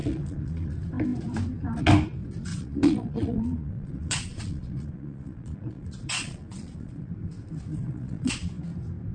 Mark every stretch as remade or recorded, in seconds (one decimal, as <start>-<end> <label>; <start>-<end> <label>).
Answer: 0.0-0.7 remade; 0.7-2.5 recorded; 2.5-7.1 remade; 7.1-7.7 recorded; 7.7-8.3 remade; 8.3-9.1 recorded